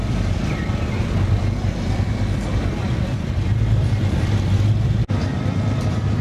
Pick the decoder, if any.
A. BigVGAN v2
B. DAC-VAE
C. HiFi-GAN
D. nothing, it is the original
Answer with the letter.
A